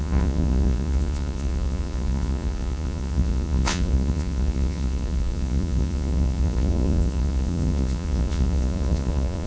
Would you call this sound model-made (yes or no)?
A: yes